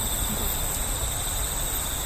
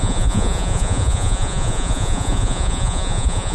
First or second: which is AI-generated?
second